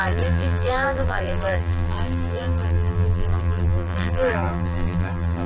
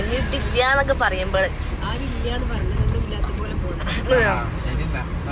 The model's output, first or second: first